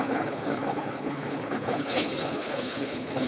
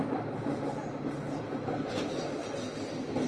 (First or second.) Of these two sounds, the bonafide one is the second